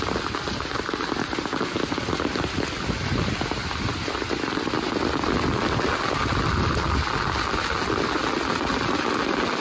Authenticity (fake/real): real